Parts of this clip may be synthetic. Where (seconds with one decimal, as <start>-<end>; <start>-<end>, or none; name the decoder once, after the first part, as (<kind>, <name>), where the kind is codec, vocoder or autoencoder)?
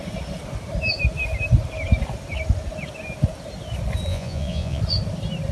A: 4.1-4.8 (vocoder, Vocos)